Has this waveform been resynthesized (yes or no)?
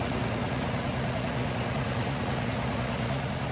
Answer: yes